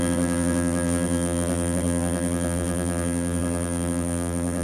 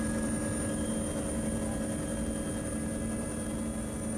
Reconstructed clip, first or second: first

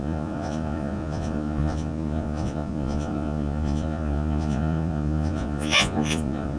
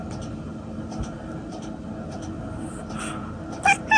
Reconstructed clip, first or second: first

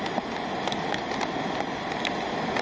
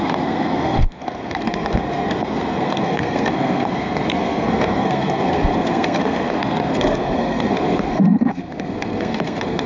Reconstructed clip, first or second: second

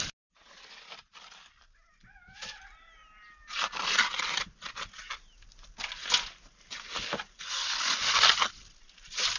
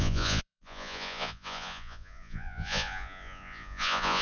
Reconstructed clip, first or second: second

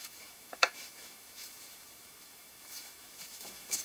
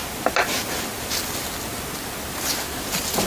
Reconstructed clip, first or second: first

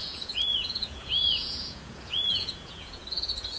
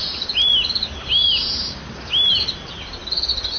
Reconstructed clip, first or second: first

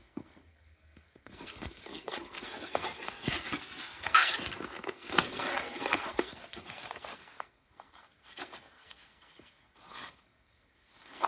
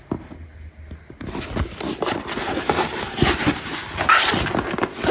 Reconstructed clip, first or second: first